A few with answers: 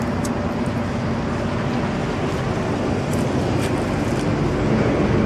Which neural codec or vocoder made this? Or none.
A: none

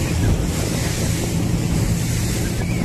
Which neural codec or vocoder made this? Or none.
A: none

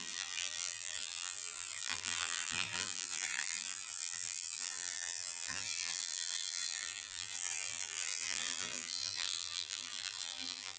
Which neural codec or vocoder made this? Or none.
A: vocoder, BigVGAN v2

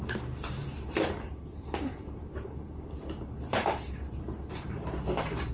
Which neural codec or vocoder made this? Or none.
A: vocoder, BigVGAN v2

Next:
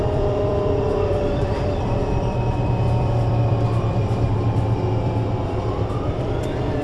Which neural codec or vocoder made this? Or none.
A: vocoder, BigVGAN v2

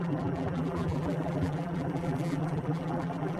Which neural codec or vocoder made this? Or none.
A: vocoder, BigVGAN v2